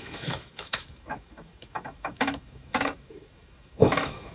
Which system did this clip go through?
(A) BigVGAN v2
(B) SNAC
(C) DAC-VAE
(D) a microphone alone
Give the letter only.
C